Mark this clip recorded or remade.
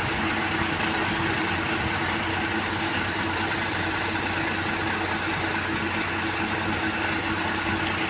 recorded